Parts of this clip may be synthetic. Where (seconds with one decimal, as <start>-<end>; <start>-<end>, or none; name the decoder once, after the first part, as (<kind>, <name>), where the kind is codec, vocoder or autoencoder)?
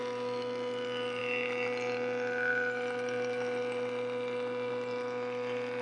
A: none